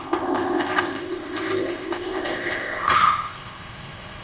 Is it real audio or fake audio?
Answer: fake